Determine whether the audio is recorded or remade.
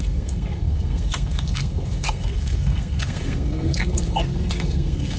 remade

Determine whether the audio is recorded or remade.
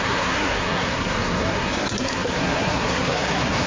remade